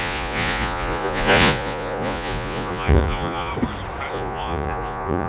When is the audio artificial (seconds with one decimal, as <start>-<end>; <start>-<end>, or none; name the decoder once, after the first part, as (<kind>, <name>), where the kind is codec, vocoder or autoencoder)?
0.0-3.5 (vocoder, Vocos); 4.1-5.3